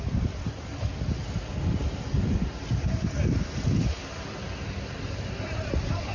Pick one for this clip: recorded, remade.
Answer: recorded